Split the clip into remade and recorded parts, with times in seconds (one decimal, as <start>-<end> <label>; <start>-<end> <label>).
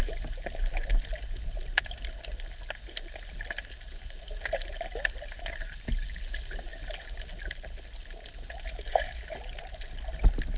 0.0-10.6 recorded